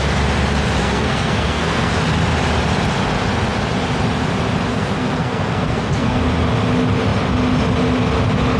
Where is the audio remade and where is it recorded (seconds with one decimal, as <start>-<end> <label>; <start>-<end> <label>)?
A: 0.0-0.8 recorded; 0.8-1.9 remade; 1.9-4.7 recorded; 4.7-6.2 remade; 6.2-8.6 recorded